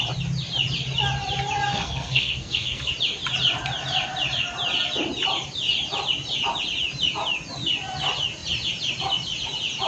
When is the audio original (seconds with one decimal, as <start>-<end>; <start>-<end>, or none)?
0.0-1.7; 2.9-9.9